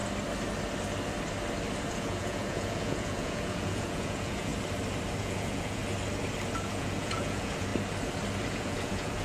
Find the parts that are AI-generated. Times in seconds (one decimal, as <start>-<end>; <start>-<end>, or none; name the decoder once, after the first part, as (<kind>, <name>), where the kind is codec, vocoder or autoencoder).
1.9-4.5 (vocoder, Vocos); 5.2-5.8; 6.7-7.7; 8.5-9.2